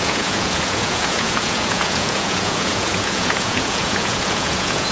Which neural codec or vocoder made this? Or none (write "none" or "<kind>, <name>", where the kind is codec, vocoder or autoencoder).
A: vocoder, Vocos